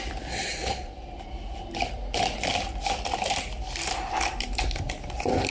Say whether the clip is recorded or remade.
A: recorded